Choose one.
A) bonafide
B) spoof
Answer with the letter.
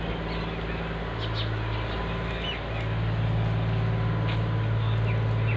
A